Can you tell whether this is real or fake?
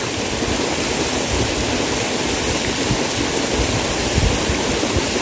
real